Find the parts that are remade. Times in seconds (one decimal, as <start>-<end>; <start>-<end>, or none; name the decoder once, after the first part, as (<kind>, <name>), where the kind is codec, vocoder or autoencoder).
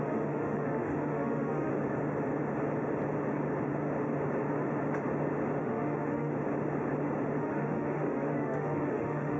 0.0-1.7 (autoencoder, DAC-VAE); 5.6-6.3; 7.4-9.4